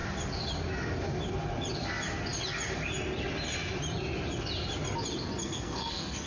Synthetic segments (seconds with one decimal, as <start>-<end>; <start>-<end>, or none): 5.4-6.3